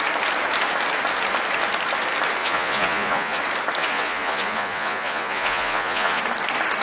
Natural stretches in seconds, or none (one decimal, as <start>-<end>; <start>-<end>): 0.0-2.4; 3.4-3.8; 6.2-6.8